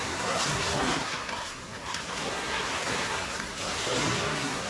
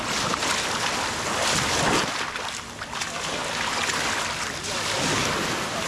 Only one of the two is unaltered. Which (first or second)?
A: second